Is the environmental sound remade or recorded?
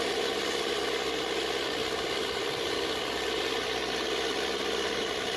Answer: recorded